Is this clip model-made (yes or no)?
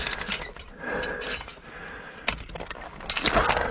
no